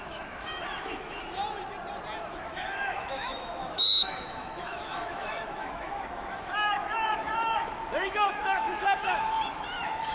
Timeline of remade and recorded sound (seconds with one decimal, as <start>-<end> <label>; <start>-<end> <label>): 0.0-1.2 remade; 1.2-2.3 recorded; 2.3-10.1 remade